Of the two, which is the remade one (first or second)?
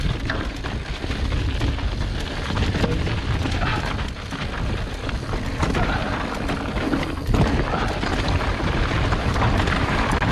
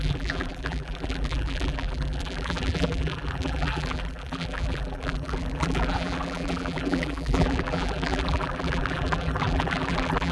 second